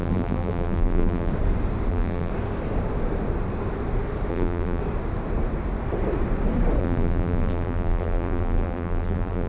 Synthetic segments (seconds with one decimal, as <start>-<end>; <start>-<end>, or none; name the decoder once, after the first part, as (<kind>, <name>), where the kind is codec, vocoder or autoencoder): 0.0-1.3 (vocoder, BigVGAN v2); 1.9-2.3; 4.3-4.8; 6.8-9.5